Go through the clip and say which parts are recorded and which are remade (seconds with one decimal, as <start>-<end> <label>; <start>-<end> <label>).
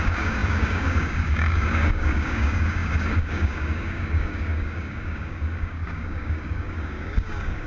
0.0-7.7 remade